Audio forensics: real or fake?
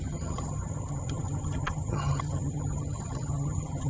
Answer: fake